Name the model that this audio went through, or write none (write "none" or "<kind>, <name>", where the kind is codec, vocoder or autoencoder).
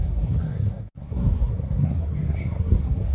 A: codec, SNAC